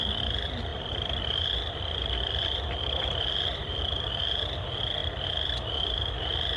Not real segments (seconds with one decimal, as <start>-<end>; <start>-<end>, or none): 0.7-3.2; 3.6-4.2; 5.0-6.1